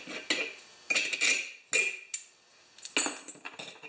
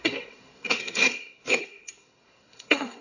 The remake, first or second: second